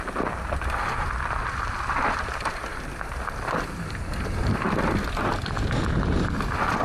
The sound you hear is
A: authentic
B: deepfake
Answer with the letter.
A